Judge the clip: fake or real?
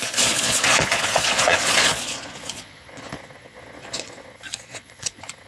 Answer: fake